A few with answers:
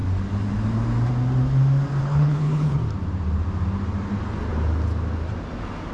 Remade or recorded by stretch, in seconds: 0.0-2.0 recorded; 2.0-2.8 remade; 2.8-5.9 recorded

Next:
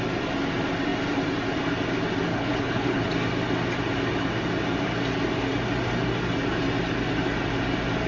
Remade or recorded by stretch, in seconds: 0.0-2.3 recorded; 2.3-3.1 remade; 3.1-8.1 recorded

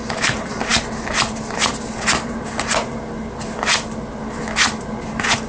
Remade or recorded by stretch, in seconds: 0.0-5.5 recorded

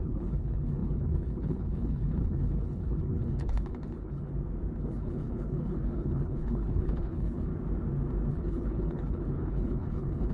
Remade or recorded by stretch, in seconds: 0.0-4.3 remade; 4.3-4.8 recorded; 4.8-7.5 remade; 7.5-8.3 recorded; 8.3-10.3 remade

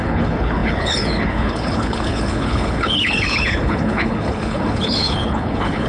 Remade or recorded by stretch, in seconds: 0.0-5.9 remade

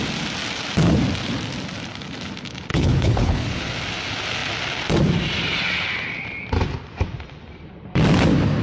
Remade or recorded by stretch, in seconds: 0.0-2.7 recorded; 2.7-3.6 remade; 3.6-8.6 recorded

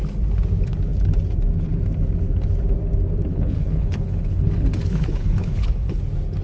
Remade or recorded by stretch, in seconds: 0.0-3.3 recorded; 3.3-6.0 remade; 6.0-6.4 recorded